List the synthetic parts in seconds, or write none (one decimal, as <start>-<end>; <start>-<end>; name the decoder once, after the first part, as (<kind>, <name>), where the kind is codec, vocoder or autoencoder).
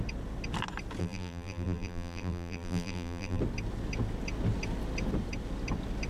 1.0-3.4 (vocoder, BigVGAN v2)